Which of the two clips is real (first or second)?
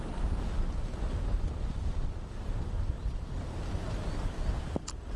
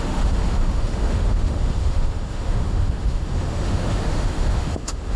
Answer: first